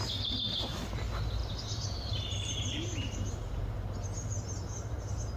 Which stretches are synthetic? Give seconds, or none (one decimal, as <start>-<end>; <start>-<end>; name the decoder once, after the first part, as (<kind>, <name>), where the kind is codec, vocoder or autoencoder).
1.4-3.6 (vocoder, BigVGAN v2)